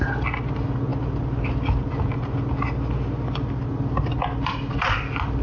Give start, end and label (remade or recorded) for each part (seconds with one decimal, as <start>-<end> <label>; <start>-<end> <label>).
0.0-5.4 recorded